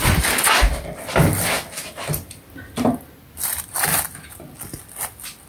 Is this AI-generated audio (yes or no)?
no